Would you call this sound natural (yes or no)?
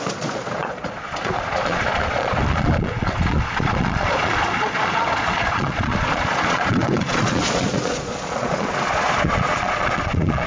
no